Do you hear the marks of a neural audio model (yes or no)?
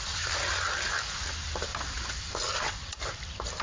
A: no